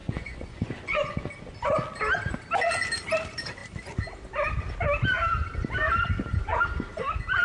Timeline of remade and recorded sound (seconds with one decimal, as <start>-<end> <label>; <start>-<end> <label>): 0.0-1.3 remade; 1.3-7.4 recorded